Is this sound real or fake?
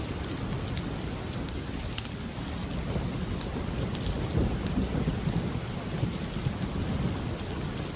real